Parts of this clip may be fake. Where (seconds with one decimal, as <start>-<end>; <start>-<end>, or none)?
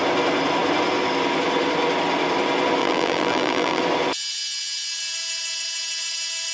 2.8-3.8